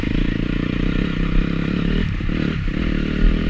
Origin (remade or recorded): remade